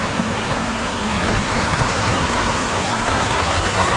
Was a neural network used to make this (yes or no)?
yes